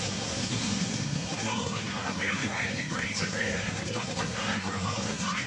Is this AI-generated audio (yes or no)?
yes